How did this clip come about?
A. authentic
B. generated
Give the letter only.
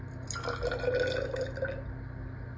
A